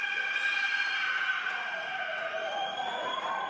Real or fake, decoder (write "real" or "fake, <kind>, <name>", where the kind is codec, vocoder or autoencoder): fake, vocoder, Vocos